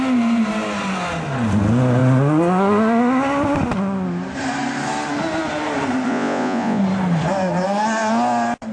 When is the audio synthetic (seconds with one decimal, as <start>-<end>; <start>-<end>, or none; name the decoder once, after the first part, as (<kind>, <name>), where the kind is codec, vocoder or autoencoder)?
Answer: 6.1-6.8 (vocoder, Vocos)